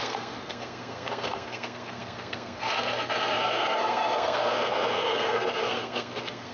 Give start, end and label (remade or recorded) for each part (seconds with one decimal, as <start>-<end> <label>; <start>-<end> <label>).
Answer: 0.0-6.5 remade